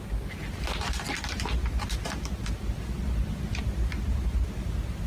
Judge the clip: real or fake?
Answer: real